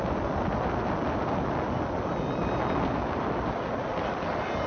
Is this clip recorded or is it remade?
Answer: recorded